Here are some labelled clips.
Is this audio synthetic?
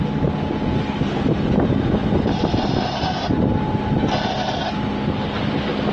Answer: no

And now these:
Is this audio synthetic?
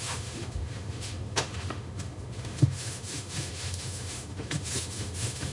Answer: yes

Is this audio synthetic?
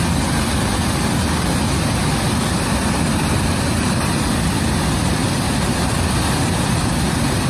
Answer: no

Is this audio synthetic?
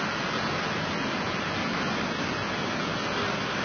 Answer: no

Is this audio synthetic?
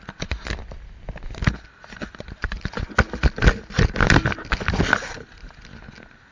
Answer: no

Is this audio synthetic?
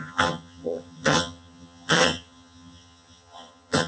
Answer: yes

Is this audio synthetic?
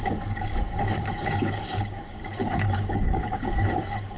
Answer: yes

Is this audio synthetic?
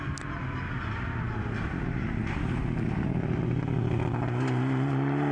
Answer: no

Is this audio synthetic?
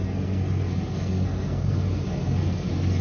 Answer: yes